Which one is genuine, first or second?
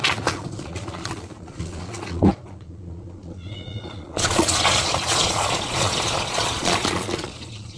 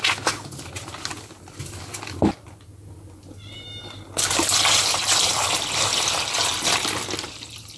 second